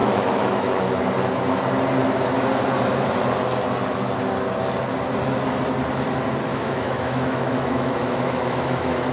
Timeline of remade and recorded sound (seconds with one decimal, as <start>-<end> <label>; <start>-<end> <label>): 0.0-1.0 remade; 1.0-6.5 recorded; 6.5-9.1 remade